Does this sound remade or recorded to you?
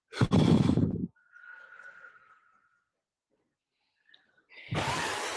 recorded